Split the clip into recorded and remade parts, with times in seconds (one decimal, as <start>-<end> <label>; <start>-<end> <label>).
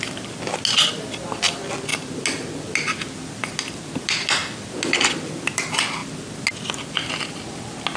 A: 0.0-8.0 recorded